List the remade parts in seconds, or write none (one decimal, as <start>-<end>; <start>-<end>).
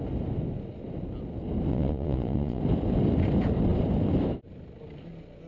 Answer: 1.7-2.6